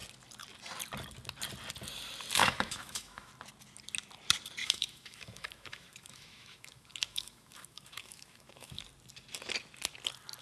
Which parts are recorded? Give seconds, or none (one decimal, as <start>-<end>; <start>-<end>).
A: 0.0-2.4; 3.3-4.6; 8.8-10.4